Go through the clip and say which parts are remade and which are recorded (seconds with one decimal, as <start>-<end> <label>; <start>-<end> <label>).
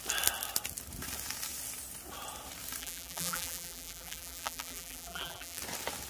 0.0-2.8 recorded; 2.8-5.6 remade; 5.6-6.1 recorded